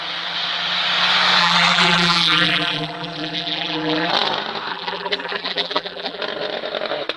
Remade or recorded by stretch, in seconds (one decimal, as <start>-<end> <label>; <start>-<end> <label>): 0.0-1.4 recorded; 1.4-4.1 remade; 4.1-4.7 recorded; 4.7-6.2 remade; 6.2-7.2 recorded

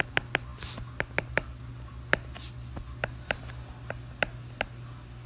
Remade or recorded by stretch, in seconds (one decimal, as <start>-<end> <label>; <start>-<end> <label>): 0.0-5.3 recorded

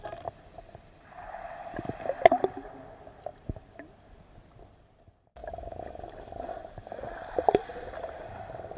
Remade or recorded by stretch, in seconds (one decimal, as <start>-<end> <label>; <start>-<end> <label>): 0.0-5.4 recorded; 5.4-6.5 remade; 6.5-8.8 recorded

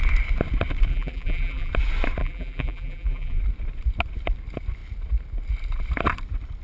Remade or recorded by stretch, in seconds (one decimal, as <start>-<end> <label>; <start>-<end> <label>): 0.0-0.9 recorded; 0.9-1.7 remade; 1.7-2.2 recorded; 2.2-3.4 remade; 3.4-6.6 recorded

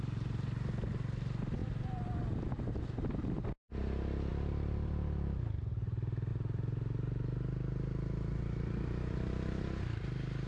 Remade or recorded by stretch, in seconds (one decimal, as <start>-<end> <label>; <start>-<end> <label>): 0.0-1.6 recorded; 1.6-2.5 remade; 2.5-10.5 recorded

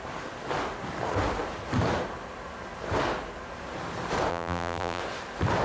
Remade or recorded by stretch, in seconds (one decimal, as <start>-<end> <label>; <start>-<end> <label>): 0.0-4.3 recorded; 4.3-5.0 remade; 5.0-5.6 recorded